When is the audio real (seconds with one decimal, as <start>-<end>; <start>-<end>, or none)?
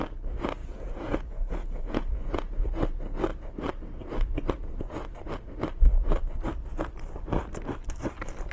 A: 0.0-0.6; 2.6-8.5